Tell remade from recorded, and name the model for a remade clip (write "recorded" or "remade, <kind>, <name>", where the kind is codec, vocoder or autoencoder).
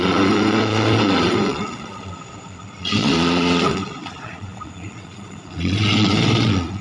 remade, vocoder, Vocos